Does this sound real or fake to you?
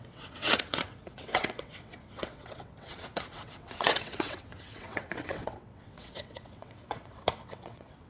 fake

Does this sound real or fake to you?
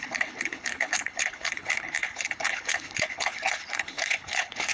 fake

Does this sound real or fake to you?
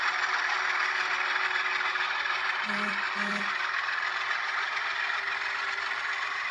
fake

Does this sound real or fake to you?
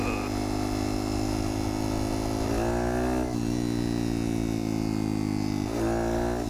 real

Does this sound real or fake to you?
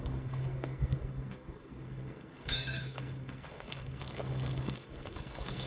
fake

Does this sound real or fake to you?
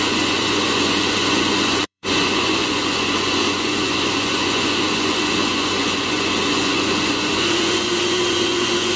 fake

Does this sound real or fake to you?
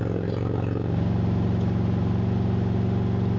real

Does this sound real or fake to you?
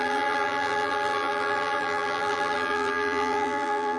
fake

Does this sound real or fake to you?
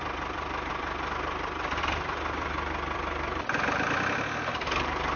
fake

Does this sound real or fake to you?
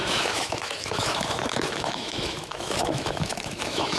fake